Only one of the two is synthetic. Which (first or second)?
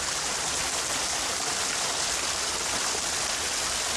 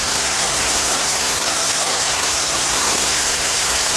second